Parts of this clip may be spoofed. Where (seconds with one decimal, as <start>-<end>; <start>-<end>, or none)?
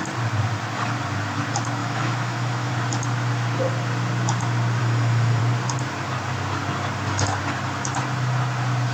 1.8-2.7; 4.8-5.4